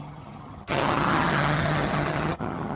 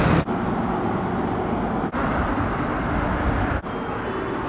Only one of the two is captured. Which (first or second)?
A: second